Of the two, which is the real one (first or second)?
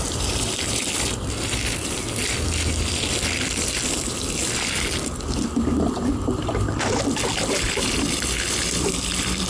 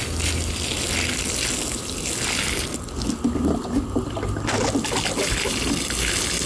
second